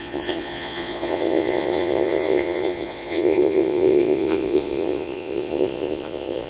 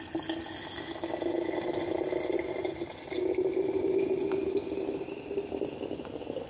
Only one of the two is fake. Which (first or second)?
first